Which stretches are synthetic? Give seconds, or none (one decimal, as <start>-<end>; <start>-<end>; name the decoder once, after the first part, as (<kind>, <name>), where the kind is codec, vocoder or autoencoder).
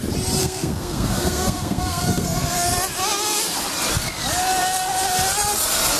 0.4-2.7 (codec, SNAC)